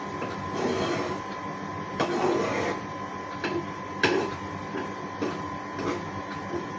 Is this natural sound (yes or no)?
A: yes